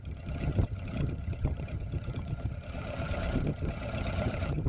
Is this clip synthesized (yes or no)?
yes